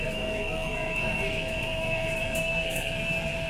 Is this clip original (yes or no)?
no